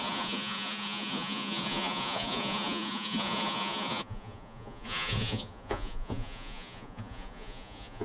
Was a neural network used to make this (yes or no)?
yes